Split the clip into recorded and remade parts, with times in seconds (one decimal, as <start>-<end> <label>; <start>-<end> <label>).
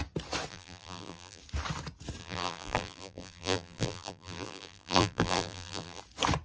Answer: 0.0-0.5 recorded; 0.5-1.4 remade; 1.4-2.2 recorded; 2.2-6.0 remade; 6.0-6.4 recorded